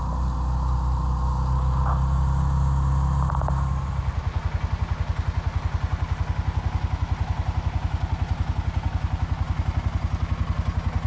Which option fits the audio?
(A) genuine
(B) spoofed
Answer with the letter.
A